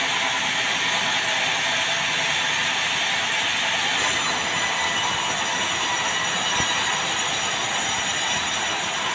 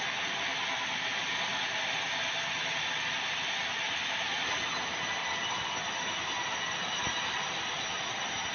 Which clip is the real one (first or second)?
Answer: first